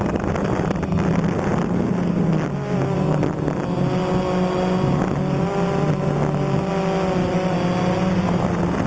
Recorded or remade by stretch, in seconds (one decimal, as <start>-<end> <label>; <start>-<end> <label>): 0.0-8.9 recorded